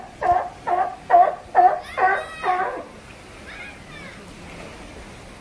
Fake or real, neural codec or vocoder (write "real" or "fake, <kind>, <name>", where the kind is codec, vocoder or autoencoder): real